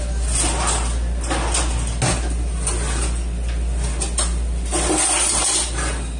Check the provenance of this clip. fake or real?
real